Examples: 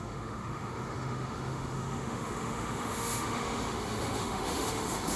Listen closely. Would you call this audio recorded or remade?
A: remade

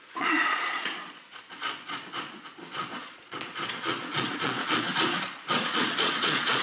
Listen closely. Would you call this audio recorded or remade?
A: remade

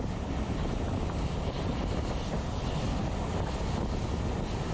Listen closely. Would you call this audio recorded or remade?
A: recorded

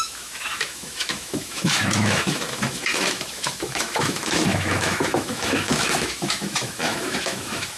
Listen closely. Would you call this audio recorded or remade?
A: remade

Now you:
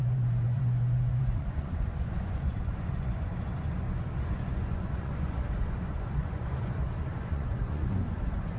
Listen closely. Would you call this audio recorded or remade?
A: remade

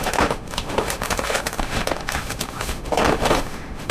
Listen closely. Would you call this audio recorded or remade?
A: remade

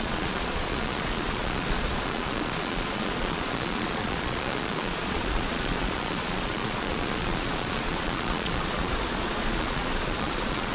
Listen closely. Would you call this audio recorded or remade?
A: remade